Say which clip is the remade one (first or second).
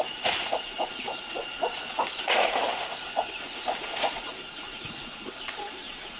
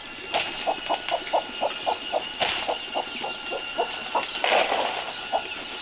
first